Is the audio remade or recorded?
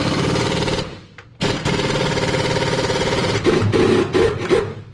remade